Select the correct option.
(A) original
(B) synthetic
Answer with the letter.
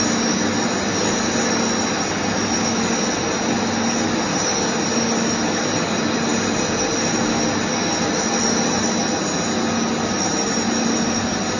A